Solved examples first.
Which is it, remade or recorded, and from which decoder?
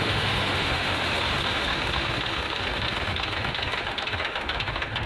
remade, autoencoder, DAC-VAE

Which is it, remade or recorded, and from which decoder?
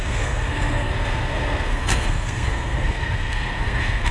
remade, codec, SNAC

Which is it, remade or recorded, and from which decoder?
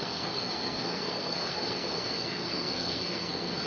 remade, codec, SNAC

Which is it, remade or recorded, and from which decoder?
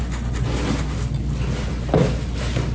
recorded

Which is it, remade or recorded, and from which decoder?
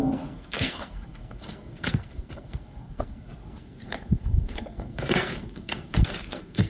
remade, codec, SNAC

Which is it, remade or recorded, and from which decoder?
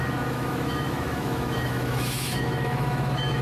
remade, autoencoder, DAC-VAE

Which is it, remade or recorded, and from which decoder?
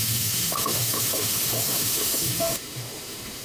remade, autoencoder, DAC-VAE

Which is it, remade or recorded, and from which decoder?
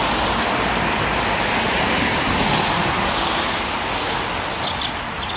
recorded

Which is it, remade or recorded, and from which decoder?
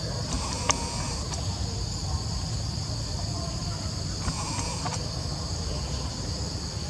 recorded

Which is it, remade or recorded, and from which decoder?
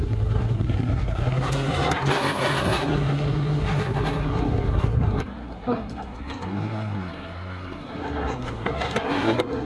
remade, codec, SNAC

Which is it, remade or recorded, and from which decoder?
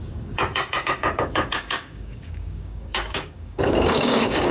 remade, codec, DAC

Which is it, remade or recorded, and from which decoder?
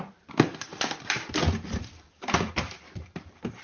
remade, vocoder, BigVGAN v2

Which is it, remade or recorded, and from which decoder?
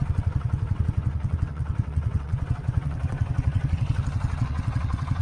remade, vocoder, WaveNeXt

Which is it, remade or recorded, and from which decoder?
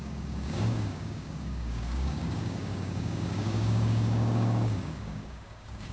remade, codec, DAC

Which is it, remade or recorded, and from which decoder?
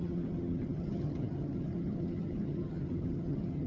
remade, vocoder, HiFi-GAN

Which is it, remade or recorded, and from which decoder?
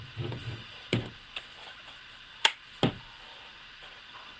recorded